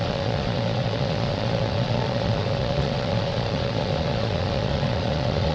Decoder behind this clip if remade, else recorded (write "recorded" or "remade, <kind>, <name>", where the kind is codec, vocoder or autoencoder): remade, vocoder, Vocos